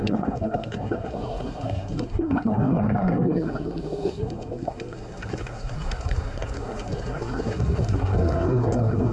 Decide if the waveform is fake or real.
fake